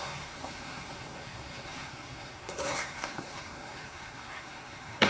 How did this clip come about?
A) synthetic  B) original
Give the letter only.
A